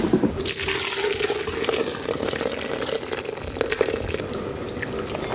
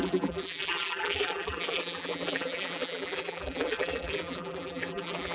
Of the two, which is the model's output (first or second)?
second